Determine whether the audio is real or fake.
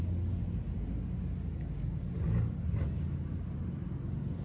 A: real